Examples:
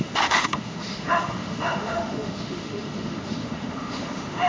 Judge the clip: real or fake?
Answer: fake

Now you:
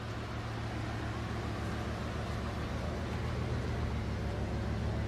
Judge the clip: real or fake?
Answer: real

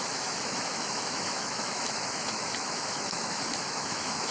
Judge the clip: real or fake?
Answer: fake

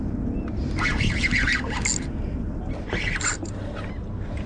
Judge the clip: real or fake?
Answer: real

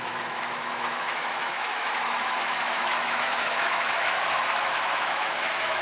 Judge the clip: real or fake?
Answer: fake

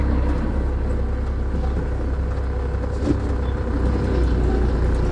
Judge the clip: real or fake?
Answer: real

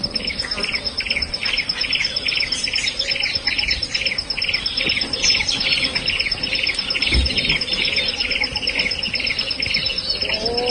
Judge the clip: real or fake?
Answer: real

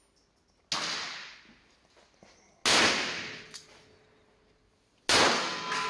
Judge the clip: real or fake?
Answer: real